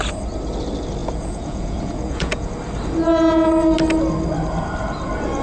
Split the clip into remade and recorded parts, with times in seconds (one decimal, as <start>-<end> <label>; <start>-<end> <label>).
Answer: 0.0-1.0 recorded; 1.0-2.5 remade; 2.5-5.4 recorded